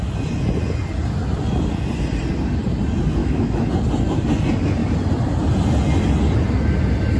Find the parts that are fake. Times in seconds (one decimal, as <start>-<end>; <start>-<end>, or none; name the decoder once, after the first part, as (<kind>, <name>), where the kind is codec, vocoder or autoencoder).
3.2-3.7 (autoencoder, DAC-VAE)